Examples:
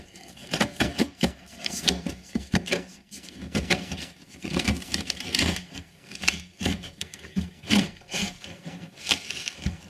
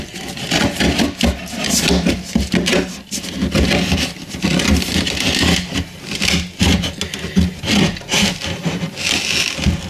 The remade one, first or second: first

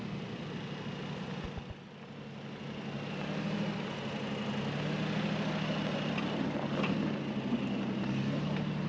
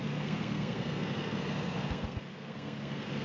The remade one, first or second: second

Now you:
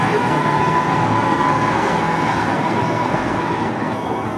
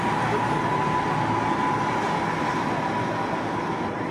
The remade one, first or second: first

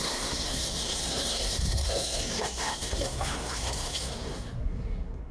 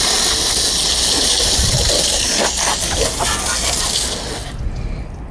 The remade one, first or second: first